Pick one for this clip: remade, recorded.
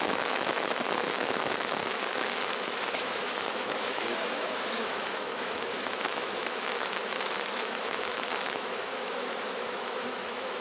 remade